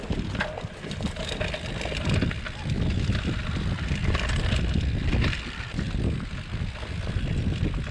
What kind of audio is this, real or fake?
real